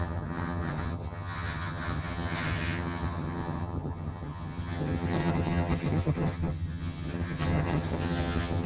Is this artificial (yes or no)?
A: yes